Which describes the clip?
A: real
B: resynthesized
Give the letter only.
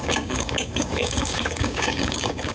B